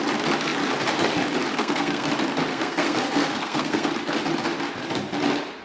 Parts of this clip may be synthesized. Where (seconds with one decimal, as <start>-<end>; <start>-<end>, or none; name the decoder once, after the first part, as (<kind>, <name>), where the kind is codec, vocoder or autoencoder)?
1.6-2.1 (codec, SNAC); 2.5-3.9